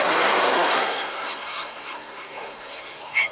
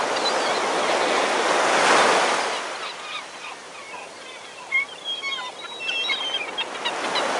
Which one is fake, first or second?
first